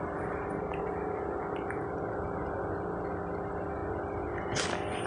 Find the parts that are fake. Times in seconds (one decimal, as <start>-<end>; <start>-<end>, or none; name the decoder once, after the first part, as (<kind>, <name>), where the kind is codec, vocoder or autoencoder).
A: none